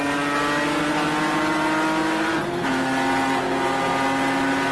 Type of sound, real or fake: real